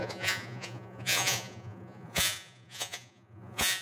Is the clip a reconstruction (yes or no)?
yes